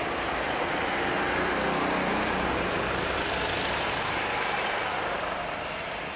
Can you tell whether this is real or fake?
real